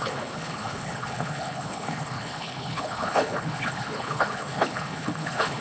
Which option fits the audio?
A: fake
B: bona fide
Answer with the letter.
A